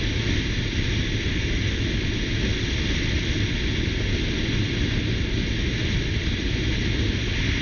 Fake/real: real